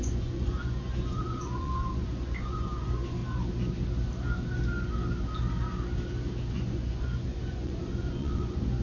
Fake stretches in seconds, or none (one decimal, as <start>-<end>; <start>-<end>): 0.0-3.2; 6.5-8.8